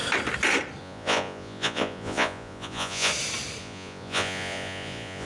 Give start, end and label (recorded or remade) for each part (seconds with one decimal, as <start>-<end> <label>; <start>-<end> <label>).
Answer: 0.0-0.8 recorded; 0.8-3.1 remade; 3.1-3.6 recorded; 3.6-5.3 remade